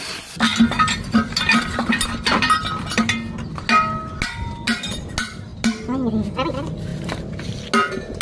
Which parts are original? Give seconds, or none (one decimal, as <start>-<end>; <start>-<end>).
0.0-8.2